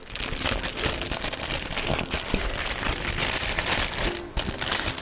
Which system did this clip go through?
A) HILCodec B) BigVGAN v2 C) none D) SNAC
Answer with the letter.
C